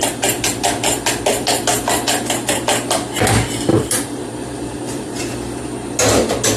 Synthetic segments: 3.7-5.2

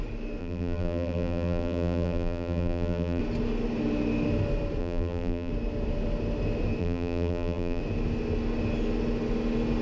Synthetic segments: 0.4-3.2; 4.8-5.5; 6.8-7.8